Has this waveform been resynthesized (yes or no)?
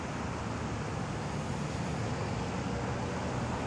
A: no